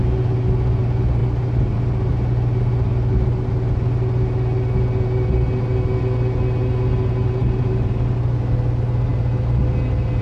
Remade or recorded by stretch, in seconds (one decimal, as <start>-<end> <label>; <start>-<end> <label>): 0.0-10.2 recorded